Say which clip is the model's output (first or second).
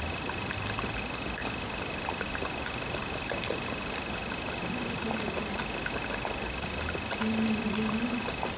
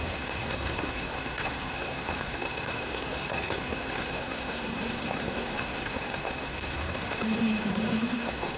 second